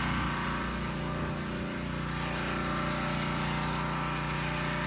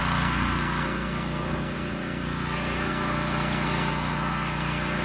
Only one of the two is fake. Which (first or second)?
second